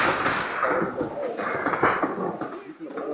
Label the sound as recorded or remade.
recorded